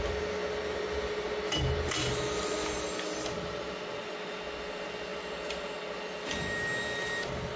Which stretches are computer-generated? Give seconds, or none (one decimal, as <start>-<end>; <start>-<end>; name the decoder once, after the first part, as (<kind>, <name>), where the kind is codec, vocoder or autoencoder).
none